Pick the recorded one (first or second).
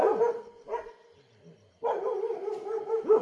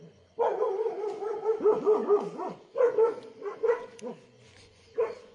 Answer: first